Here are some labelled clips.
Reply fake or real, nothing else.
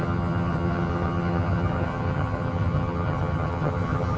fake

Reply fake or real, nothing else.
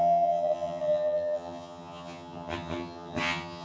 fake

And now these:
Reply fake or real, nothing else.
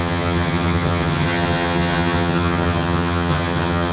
fake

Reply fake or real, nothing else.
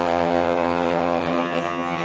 fake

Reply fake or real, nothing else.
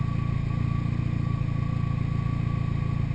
real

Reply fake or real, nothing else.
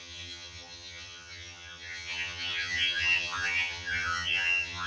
fake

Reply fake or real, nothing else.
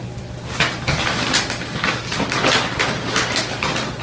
real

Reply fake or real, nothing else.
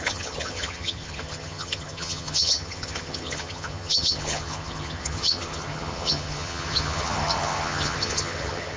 fake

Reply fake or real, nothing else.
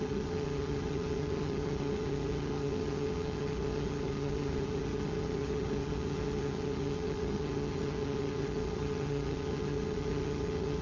fake